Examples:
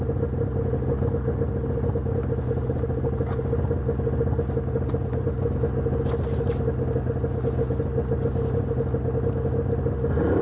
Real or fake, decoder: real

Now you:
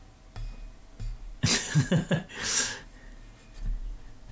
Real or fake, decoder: real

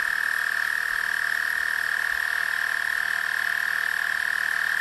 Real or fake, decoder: real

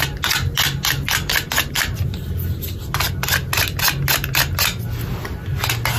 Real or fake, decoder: real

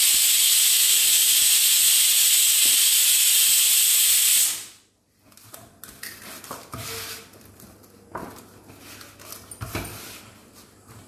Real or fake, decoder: real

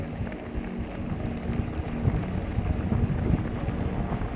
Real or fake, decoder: real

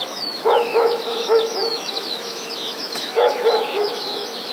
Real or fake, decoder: fake, autoencoder, DAC-VAE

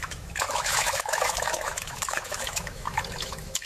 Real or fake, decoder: fake, autoencoder, DAC-VAE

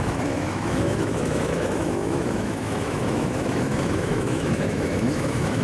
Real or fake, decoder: fake, autoencoder, DAC-VAE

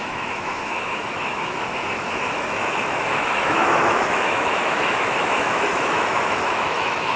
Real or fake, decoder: fake, autoencoder, DAC-VAE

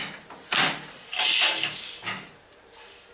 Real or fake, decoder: real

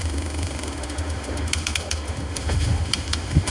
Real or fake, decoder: fake, autoencoder, DAC-VAE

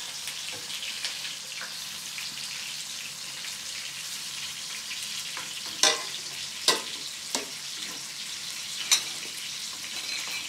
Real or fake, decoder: real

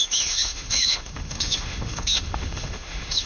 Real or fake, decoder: fake, autoencoder, DAC-VAE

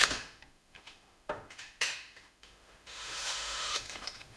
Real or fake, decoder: fake, autoencoder, DAC-VAE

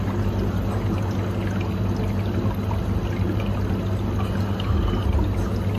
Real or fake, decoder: real